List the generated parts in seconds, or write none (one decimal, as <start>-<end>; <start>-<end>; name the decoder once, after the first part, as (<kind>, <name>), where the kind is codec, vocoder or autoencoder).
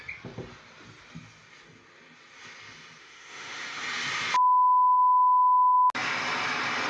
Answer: 3.0-3.8 (autoencoder, DAC-VAE)